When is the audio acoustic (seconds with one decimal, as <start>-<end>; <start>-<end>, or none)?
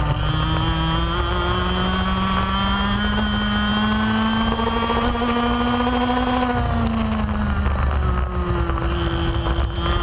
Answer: 0.0-10.0